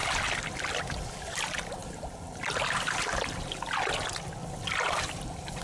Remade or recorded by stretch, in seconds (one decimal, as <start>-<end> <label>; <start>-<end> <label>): 0.0-5.6 recorded